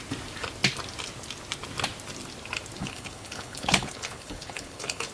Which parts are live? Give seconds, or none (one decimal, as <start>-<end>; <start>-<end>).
0.0-2.8